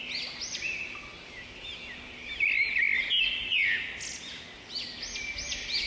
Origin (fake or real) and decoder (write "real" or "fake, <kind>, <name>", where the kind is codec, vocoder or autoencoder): real